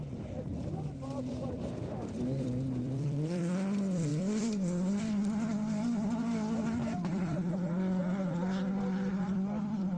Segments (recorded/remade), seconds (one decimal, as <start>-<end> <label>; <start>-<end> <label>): 0.0-8.0 remade; 8.0-8.8 recorded; 8.8-10.0 remade